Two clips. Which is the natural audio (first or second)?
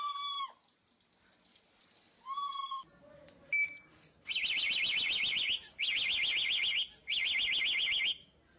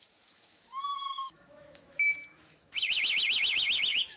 first